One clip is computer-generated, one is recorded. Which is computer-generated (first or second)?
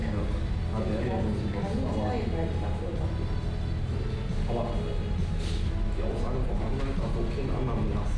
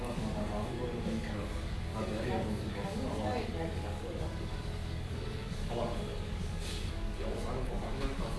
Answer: second